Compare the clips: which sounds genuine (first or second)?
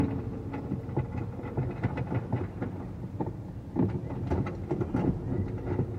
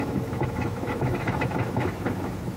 first